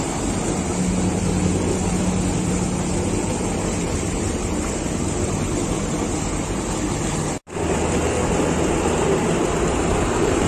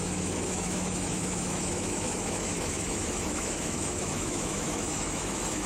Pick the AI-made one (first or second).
second